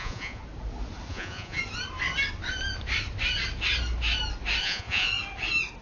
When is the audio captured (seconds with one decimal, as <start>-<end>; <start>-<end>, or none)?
0.4-1.1; 1.6-4.6; 5.1-5.8